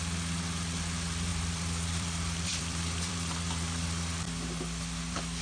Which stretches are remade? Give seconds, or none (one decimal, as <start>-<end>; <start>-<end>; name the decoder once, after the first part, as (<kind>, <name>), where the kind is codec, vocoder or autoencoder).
1.3-3.7 (vocoder, BigVGAN v2)